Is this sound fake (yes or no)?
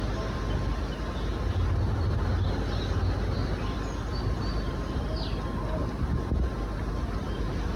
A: no